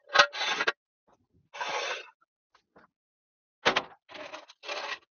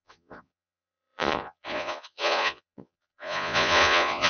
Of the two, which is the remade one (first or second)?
second